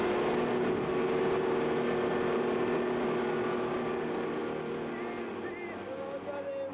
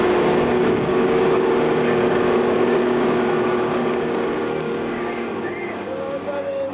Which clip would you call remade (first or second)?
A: second